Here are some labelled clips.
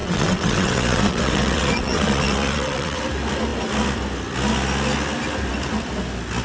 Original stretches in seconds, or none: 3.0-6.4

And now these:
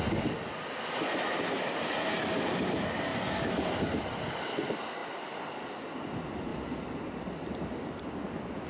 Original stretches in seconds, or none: 0.0-8.7